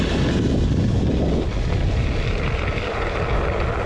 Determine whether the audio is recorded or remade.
recorded